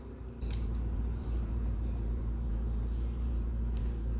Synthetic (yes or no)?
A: yes